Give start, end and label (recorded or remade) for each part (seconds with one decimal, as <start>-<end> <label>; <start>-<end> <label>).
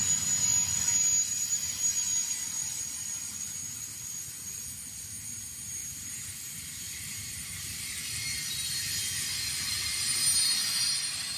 0.0-5.8 recorded; 5.8-9.0 remade; 9.0-11.4 recorded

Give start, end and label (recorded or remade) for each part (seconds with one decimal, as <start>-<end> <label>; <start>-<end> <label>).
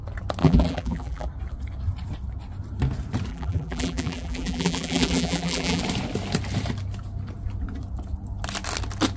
0.0-0.4 recorded; 0.4-1.3 remade; 1.3-3.3 recorded; 3.3-5.8 remade; 5.8-9.2 recorded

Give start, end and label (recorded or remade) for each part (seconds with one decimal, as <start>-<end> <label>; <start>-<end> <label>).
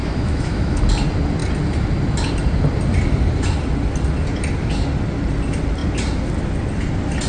0.0-0.8 remade; 0.8-7.3 recorded